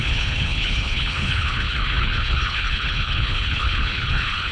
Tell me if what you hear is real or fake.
fake